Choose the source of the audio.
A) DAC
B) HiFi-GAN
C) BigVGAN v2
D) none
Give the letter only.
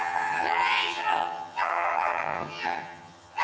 B